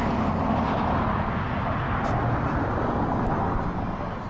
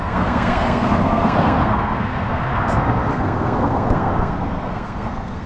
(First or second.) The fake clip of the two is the second